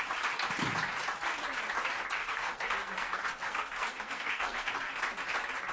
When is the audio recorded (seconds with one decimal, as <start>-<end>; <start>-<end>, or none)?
0.0-2.2; 5.0-5.7